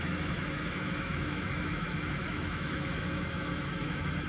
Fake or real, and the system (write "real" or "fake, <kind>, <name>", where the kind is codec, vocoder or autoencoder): fake, autoencoder, DAC-VAE